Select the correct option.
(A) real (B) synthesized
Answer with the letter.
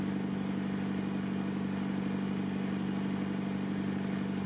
A